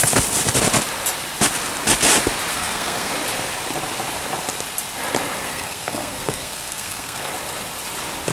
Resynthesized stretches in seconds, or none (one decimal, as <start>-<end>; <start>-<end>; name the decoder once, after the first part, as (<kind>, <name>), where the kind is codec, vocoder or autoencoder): 2.5-3.1 (codec, SNAC); 5.4-7.3